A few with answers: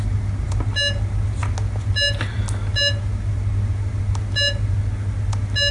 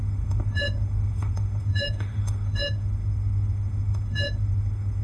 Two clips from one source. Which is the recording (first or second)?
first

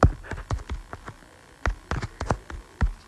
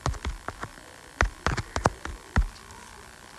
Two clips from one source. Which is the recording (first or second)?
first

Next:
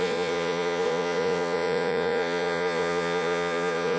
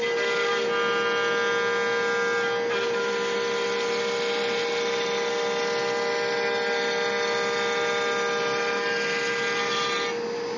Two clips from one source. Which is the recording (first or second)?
second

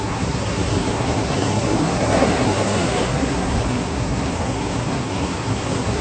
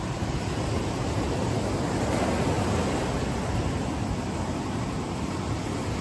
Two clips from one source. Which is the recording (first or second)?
second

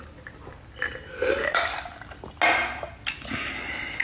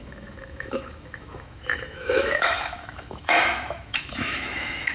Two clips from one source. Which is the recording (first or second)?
first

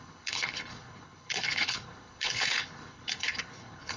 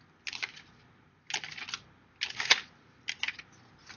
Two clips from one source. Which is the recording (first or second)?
second